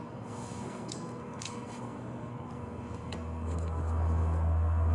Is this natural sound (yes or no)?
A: no